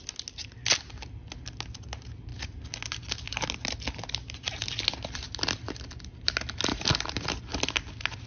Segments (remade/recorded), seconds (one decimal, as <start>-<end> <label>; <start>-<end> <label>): 0.0-8.3 recorded